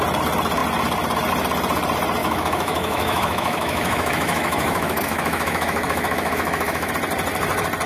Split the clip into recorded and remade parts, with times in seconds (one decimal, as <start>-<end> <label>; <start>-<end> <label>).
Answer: 0.0-2.2 recorded; 2.2-6.9 remade; 6.9-7.9 recorded